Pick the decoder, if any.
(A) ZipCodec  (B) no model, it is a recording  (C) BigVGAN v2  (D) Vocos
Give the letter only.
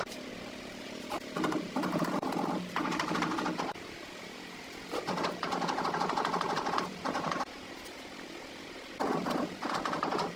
D